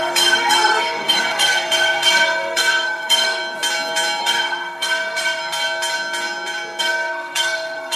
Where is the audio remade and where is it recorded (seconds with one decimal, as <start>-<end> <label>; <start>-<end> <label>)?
0.0-3.4 remade; 3.4-4.2 recorded; 4.2-5.4 remade; 5.4-6.8 recorded; 6.8-8.0 remade